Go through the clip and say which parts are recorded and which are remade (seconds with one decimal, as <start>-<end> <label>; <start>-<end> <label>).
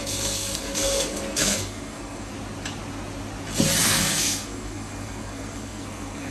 0.0-2.3 remade; 2.3-3.8 recorded; 3.8-6.3 remade